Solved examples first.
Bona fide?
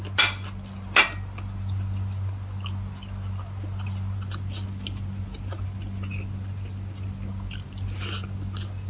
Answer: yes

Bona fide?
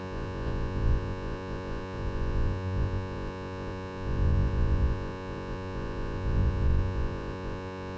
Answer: no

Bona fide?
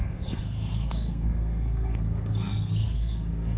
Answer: no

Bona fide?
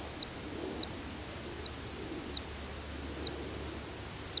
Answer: yes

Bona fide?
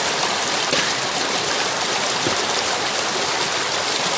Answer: yes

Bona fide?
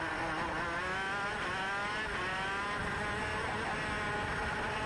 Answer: yes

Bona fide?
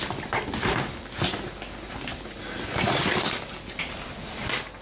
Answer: yes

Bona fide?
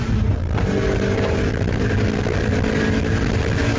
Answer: yes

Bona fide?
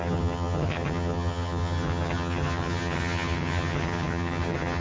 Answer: no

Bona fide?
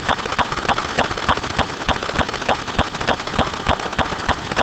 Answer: yes